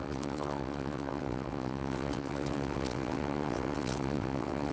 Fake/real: fake